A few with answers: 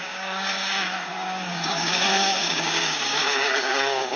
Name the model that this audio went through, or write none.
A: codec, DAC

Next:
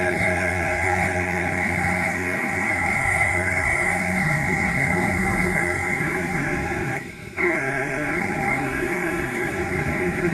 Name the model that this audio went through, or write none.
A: codec, SNAC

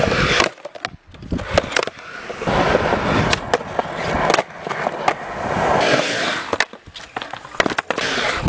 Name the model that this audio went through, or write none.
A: none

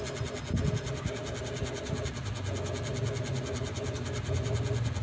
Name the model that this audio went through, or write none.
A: none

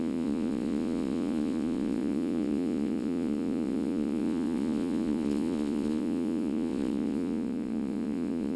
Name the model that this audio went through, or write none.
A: vocoder, Vocos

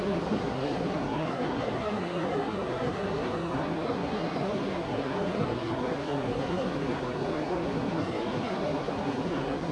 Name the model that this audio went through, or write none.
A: codec, SNAC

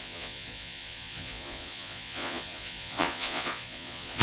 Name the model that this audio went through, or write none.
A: vocoder, Vocos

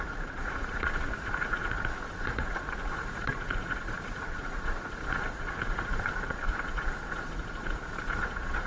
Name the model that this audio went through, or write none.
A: vocoder, Vocos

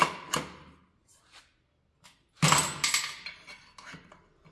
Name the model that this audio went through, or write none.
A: none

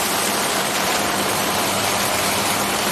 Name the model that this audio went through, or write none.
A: vocoder, BigVGAN v2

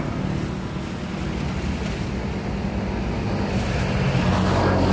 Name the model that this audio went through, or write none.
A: none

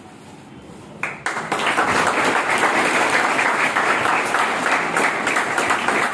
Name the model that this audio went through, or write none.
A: none